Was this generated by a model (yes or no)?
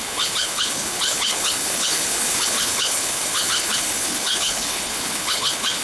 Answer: yes